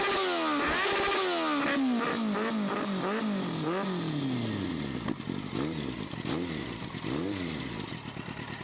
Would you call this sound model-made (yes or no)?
no